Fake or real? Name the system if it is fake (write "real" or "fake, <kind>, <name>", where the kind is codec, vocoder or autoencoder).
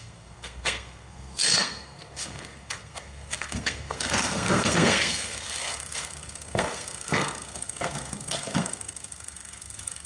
fake, codec, SNAC